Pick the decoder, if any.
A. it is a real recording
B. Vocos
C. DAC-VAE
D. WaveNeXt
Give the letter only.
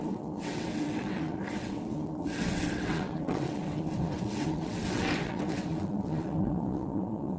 D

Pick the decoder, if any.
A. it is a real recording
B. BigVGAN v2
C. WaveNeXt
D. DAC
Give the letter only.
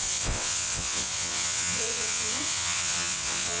C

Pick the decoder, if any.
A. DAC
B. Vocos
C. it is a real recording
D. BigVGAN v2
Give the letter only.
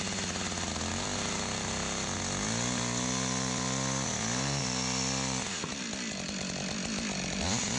C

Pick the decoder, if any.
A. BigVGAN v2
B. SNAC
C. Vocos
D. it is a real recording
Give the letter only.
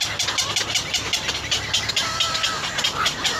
D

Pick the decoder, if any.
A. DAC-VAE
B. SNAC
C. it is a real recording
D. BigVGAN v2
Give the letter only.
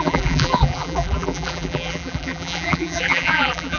D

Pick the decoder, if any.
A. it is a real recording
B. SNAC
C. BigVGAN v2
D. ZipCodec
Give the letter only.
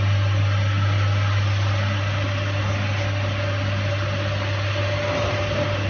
A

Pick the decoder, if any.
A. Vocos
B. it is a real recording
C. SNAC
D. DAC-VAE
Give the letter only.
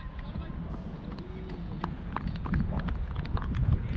A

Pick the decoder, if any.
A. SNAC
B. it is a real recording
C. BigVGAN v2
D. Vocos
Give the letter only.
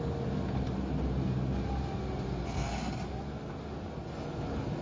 B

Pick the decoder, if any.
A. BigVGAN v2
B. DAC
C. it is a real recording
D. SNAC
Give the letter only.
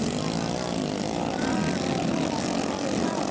C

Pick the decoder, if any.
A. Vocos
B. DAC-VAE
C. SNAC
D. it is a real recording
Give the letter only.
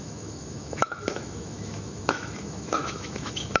B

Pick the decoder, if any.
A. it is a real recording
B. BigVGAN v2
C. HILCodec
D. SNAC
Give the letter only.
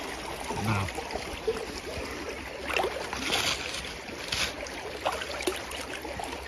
A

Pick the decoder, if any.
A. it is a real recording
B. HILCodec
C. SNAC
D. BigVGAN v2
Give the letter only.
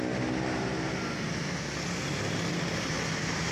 A